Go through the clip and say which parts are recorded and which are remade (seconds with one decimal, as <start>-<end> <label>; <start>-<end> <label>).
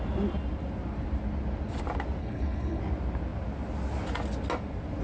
0.0-2.2 recorded; 2.2-2.8 remade; 2.8-5.0 recorded